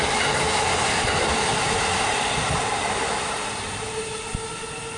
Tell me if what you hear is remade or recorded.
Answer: recorded